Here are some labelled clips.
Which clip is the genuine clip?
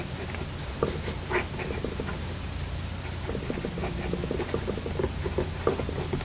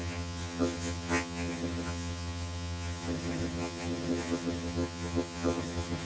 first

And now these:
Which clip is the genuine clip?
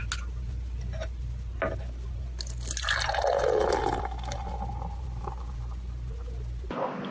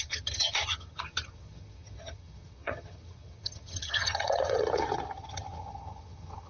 first